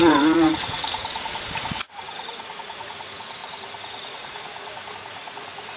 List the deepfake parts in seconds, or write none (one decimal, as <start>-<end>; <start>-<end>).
0.0-1.0; 1.6-5.8